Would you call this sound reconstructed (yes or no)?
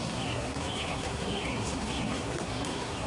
yes